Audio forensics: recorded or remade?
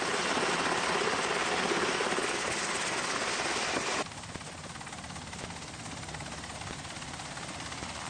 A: recorded